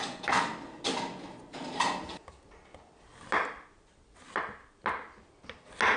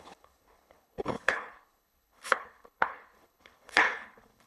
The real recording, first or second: first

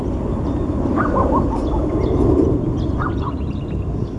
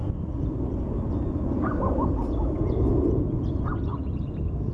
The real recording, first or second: second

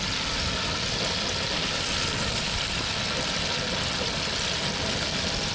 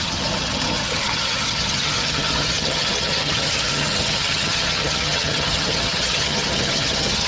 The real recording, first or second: first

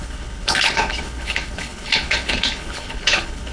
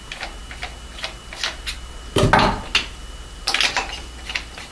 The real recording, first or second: second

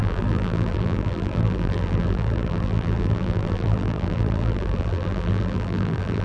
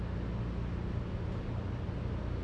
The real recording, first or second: second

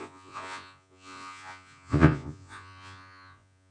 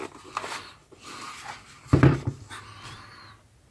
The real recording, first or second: second